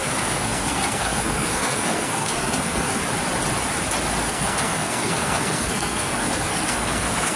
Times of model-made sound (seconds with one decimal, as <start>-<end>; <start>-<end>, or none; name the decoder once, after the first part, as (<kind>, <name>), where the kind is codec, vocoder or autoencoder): 0.0-3.0 (codec, SNAC); 4.2-7.4